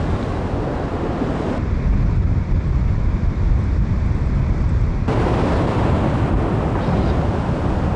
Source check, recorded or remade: recorded